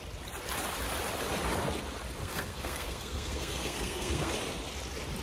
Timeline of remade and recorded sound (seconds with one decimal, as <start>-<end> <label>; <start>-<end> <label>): 0.0-2.2 recorded; 2.2-4.3 remade; 4.3-5.2 recorded